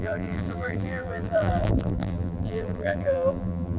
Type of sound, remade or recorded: remade